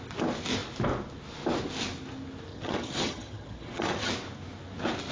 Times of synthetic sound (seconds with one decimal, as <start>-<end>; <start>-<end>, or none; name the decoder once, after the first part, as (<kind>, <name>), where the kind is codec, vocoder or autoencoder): 2.5-4.1 (vocoder, HiFi-GAN)

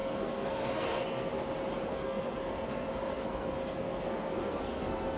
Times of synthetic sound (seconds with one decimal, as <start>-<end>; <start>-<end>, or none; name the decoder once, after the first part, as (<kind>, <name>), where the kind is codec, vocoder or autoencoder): 0.0-1.3 (codec, SNAC); 1.9-5.2

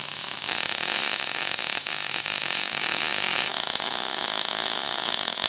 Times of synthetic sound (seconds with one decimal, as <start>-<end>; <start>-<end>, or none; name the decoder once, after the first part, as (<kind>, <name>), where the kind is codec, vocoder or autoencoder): 0.0-5.5 (autoencoder, DAC-VAE)

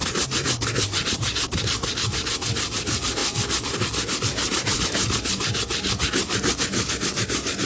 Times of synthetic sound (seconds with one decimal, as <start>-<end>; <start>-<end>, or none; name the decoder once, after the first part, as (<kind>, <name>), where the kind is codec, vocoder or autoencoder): none

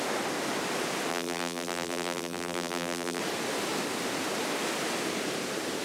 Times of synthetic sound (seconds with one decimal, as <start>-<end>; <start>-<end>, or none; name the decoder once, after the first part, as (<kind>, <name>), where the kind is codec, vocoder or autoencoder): 1.1-3.2 (vocoder, BigVGAN v2)

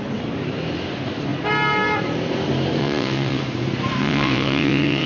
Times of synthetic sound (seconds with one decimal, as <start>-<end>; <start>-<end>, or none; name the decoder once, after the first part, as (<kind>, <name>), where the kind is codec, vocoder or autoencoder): 2.8-3.4 (vocoder, WaveNeXt); 4.0-5.1